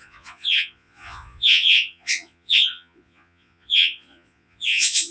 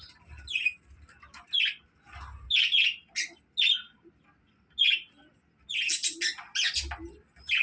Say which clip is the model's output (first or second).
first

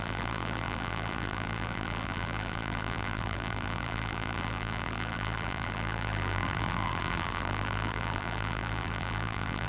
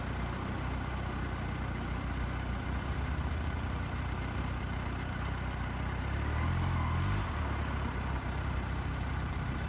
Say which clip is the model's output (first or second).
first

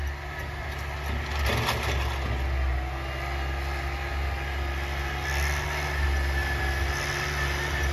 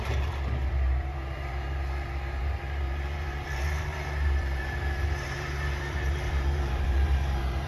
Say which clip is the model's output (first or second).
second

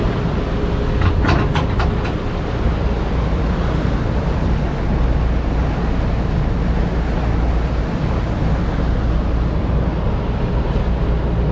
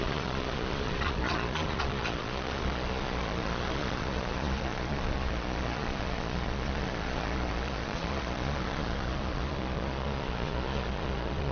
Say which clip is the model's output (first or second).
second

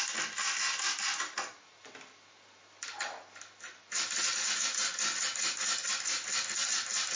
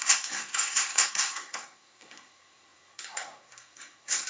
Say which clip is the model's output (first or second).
second